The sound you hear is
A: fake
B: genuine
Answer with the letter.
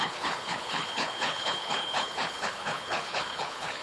A